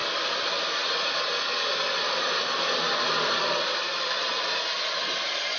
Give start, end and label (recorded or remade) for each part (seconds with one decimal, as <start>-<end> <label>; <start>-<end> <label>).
0.0-5.6 recorded